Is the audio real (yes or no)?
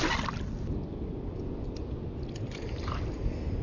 yes